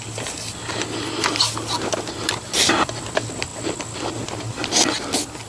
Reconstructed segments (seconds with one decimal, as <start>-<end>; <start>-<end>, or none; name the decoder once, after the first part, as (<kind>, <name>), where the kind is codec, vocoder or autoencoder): none